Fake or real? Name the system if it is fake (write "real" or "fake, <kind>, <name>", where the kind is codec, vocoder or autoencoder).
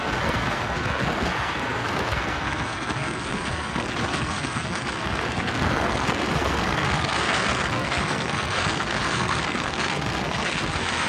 fake, codec, SNAC